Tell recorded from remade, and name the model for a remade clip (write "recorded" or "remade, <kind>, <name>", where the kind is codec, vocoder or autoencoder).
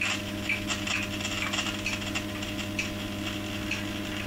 remade, vocoder, BigVGAN v2